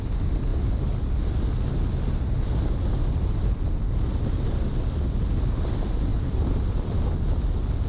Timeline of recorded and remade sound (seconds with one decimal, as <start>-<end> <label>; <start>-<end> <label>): 0.0-6.1 recorded; 6.1-7.0 remade; 7.0-7.9 recorded